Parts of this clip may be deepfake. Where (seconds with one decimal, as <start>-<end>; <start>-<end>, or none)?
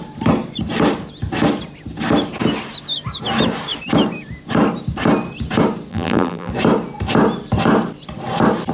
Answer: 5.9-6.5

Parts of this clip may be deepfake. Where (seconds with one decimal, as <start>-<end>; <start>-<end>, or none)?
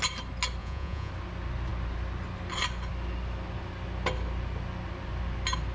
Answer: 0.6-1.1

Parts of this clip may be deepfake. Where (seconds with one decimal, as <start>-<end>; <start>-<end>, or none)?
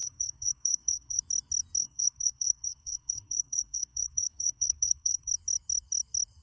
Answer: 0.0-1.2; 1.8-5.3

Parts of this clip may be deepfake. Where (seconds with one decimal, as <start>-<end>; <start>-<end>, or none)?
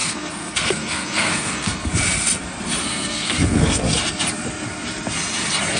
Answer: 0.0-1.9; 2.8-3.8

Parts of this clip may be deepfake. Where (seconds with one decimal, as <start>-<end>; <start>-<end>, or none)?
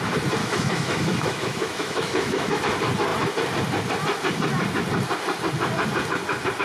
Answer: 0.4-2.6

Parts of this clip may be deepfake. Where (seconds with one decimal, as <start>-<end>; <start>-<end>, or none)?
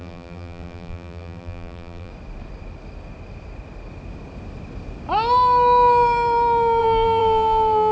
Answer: 0.0-2.1; 6.8-7.9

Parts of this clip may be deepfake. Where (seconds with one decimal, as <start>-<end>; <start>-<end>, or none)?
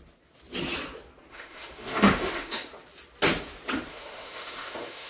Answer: 1.3-2.7; 3.9-5.1